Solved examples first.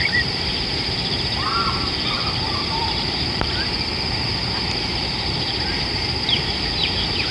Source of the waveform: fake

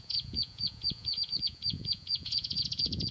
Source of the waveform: fake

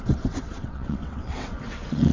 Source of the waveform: fake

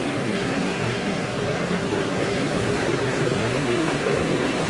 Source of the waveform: fake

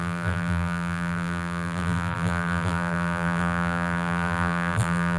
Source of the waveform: fake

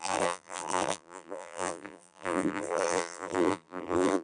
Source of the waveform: fake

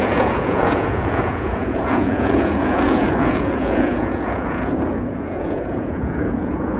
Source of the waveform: fake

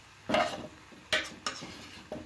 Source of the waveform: real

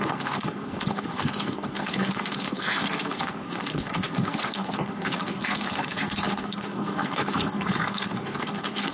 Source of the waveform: fake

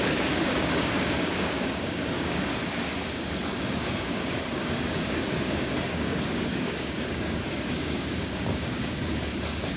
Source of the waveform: fake